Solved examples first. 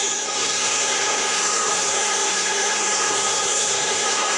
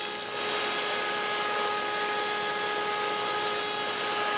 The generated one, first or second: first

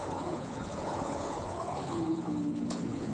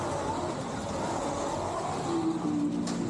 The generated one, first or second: first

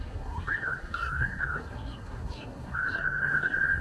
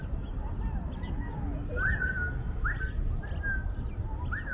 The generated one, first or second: first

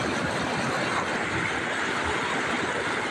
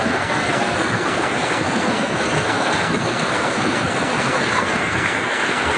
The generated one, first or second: second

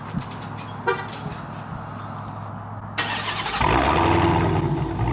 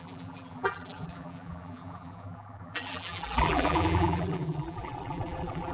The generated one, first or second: second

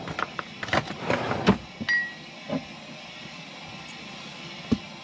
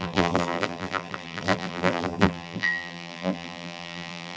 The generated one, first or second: second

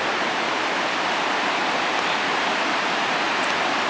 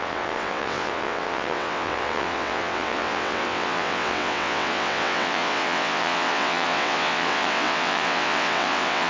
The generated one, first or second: second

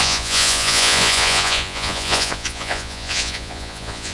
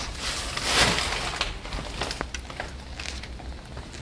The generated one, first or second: first